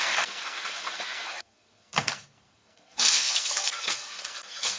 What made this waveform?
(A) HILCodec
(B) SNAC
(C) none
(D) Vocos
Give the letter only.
B